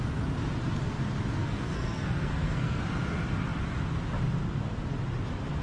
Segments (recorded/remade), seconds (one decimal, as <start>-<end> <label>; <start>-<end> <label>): 0.0-1.4 recorded; 1.4-2.8 remade; 2.8-5.6 recorded